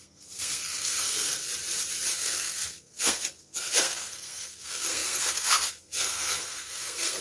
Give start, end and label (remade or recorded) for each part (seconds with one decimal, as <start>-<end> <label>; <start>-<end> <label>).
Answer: 0.0-1.5 remade; 1.5-2.1 recorded; 2.1-7.2 remade